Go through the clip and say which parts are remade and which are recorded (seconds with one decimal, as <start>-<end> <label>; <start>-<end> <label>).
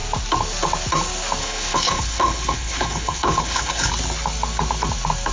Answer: 0.0-1.4 recorded; 1.4-3.9 remade; 3.9-5.3 recorded